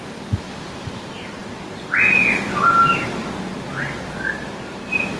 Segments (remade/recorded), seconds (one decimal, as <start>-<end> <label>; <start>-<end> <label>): 0.0-5.2 recorded